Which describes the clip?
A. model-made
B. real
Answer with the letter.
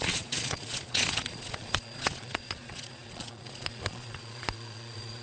A